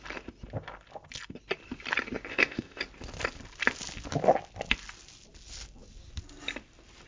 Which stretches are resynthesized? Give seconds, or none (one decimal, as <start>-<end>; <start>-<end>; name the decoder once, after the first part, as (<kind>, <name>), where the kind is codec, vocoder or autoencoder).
2.3-2.8 (codec, ZipCodec)